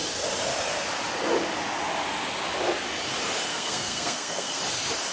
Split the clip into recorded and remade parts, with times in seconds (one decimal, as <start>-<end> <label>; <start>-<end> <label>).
0.0-3.5 recorded; 3.5-4.6 remade; 4.6-5.1 recorded